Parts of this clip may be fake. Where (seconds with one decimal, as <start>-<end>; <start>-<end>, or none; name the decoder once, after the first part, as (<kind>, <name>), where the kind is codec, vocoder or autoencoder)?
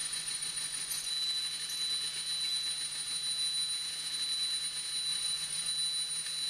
0.0-1.1 (vocoder, Vocos); 5.1-5.7